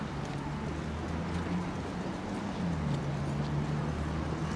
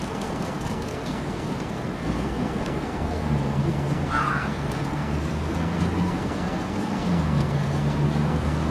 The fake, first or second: second